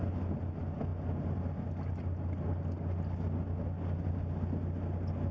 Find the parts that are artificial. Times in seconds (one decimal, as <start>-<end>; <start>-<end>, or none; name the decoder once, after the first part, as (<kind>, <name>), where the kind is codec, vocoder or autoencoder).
none

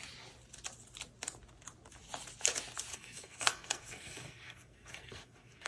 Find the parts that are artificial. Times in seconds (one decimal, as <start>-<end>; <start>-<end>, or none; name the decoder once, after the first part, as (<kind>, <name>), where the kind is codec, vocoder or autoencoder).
2.9-5.7 (codec, SNAC)